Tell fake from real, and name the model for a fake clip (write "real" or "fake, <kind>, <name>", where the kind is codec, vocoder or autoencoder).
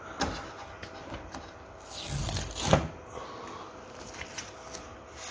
real